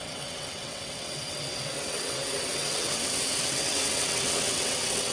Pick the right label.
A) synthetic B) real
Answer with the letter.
A